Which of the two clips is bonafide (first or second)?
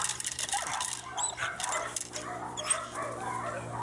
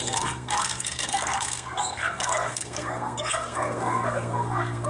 first